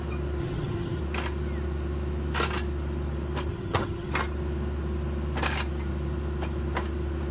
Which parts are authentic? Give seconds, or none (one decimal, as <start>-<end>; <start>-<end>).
0.0-0.4; 1.0-3.5; 4.1-7.3